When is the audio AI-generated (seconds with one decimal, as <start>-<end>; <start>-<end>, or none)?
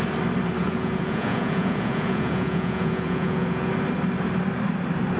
0.6-3.7